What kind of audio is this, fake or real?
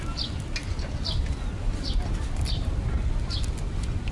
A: real